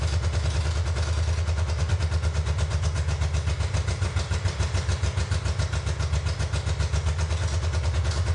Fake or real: real